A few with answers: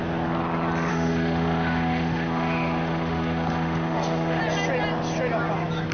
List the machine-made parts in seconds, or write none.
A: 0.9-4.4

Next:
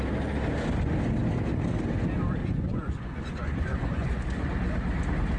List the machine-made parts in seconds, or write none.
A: 2.4-4.2